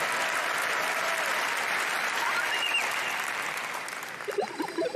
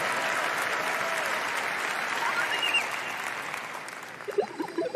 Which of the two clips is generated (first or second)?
first